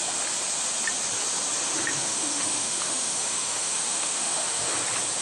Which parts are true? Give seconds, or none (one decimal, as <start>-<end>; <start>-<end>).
0.0-1.9; 4.7-5.2